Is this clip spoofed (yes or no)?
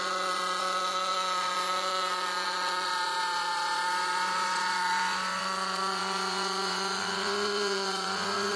yes